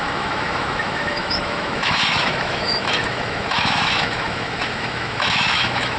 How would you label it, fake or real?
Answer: fake